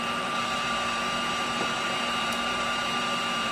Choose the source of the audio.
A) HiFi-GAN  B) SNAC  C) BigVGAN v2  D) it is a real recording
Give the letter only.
C